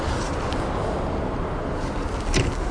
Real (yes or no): yes